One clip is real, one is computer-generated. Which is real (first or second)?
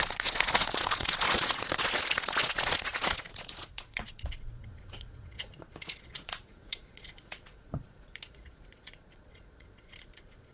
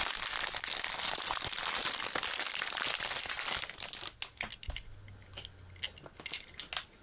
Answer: second